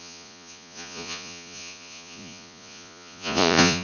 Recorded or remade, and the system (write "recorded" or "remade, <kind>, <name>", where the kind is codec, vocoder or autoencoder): remade, vocoder, Vocos